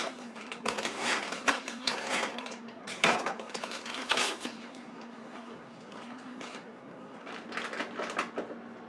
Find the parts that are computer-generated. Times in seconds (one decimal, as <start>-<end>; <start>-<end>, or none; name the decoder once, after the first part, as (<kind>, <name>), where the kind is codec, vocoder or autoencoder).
0.0-7.3 (codec, SNAC)